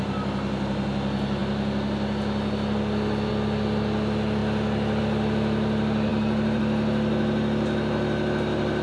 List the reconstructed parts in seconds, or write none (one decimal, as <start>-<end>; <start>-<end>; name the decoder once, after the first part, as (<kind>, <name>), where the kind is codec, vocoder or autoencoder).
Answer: 6.1-6.6 (vocoder, BigVGAN v2)